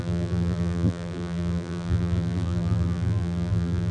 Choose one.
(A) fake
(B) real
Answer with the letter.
A